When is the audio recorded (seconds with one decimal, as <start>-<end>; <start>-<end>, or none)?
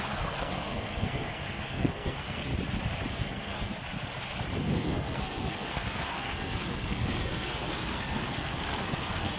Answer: 2.5-3.1; 3.7-4.6